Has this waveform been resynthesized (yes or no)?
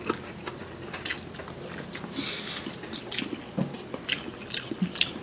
no